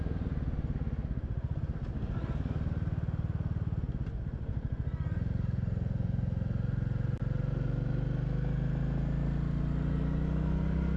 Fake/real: real